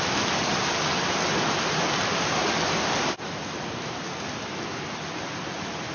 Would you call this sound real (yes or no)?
yes